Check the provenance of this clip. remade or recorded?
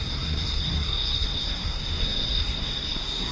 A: remade